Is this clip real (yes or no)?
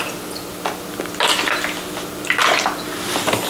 yes